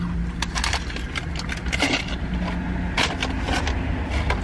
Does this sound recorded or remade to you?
recorded